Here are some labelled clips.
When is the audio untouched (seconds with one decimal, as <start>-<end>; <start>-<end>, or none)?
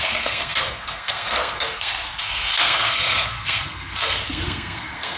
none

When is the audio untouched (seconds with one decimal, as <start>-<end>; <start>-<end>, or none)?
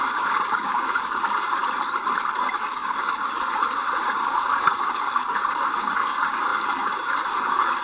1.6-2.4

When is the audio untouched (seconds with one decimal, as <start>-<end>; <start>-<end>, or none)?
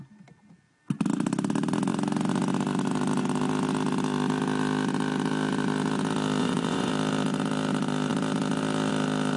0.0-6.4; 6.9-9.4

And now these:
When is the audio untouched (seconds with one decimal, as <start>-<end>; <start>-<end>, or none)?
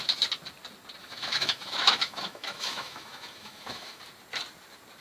0.0-1.0; 4.0-5.0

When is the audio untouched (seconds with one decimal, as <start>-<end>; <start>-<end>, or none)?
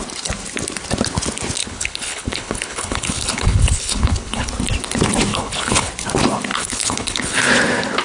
0.0-1.6; 4.5-5.3; 5.9-6.5; 7.5-8.0